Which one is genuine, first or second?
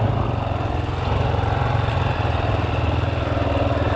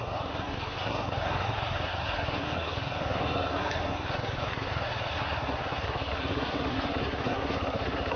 first